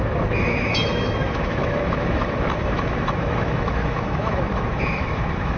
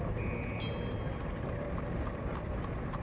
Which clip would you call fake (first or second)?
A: first